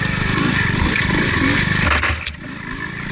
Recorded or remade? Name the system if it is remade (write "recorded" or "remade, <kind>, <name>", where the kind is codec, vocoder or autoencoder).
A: recorded